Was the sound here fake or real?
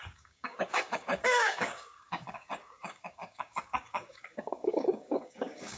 fake